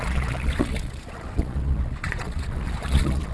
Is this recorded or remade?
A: remade